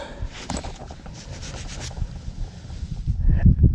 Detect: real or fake fake